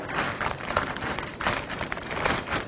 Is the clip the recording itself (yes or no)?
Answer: no